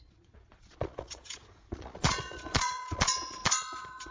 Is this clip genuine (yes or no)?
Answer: no